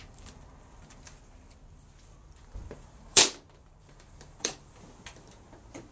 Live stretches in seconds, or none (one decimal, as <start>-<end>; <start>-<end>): 0.0-2.6; 3.2-3.6; 4.7-5.9